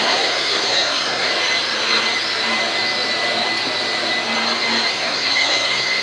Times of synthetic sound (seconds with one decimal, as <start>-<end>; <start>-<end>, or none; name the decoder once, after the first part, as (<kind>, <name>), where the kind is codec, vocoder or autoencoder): 0.0-1.3 (codec, SNAC); 4.9-6.0